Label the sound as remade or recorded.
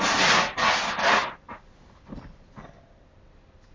recorded